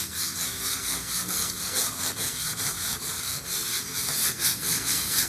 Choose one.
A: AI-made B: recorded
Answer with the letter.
A